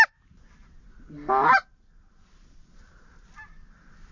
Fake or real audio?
real